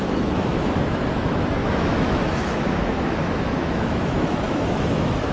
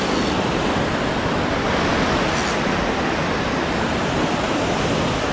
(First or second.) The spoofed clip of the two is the first